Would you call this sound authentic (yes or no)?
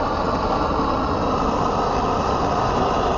yes